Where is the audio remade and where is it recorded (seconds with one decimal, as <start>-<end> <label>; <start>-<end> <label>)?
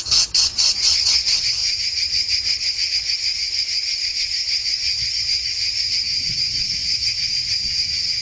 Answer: 0.0-8.2 remade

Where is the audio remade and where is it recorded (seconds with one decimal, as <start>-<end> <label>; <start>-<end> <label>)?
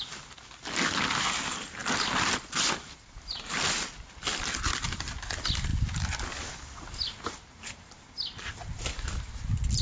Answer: 0.0-9.8 recorded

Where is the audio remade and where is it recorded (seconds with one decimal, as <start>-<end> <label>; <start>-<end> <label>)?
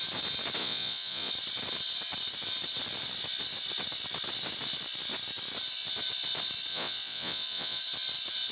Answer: 0.0-0.6 recorded; 0.6-1.3 remade; 1.3-6.7 recorded; 6.7-7.8 remade; 7.8-8.5 recorded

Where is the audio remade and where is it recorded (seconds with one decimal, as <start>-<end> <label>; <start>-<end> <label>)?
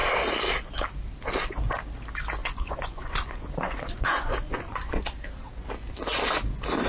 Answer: 0.0-2.4 recorded; 2.4-5.0 remade; 5.0-6.9 recorded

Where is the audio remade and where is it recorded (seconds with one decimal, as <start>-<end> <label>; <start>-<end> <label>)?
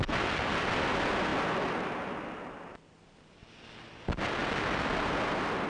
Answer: 0.0-5.7 recorded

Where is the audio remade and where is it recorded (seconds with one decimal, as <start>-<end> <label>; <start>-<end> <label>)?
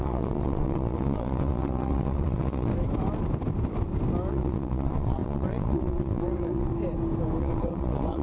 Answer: 0.0-2.7 remade; 2.7-4.3 recorded; 4.3-6.7 remade; 6.7-7.4 recorded; 7.4-8.2 remade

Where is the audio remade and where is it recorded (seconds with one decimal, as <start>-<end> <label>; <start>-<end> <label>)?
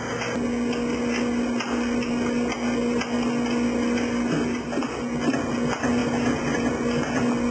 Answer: 0.0-7.5 recorded